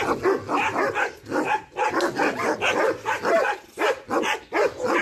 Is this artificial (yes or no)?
no